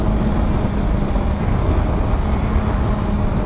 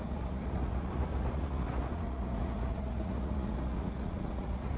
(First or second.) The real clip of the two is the first